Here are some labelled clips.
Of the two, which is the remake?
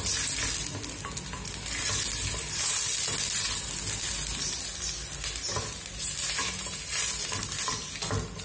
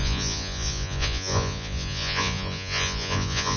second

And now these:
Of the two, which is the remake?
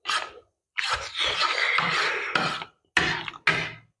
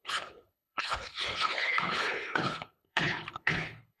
second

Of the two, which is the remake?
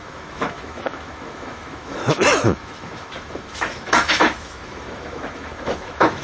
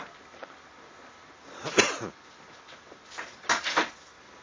first